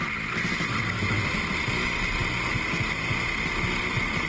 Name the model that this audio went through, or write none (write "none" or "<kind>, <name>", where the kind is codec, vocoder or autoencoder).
none